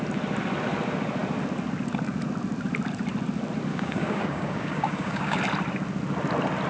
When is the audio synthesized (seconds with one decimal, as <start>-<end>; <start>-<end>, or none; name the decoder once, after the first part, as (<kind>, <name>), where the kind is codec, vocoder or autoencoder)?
3.7-5.4 (codec, DAC)